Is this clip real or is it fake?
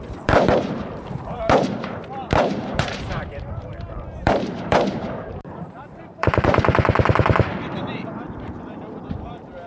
fake